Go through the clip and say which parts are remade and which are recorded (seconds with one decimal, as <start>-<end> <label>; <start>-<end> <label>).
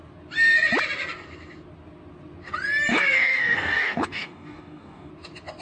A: 0.0-2.9 recorded; 2.9-5.1 remade; 5.1-5.6 recorded